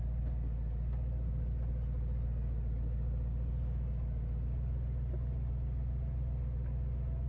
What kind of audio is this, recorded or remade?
recorded